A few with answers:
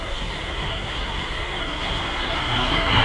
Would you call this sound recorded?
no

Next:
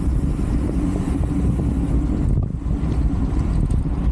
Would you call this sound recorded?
yes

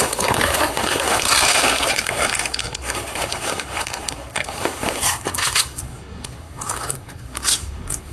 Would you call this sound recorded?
no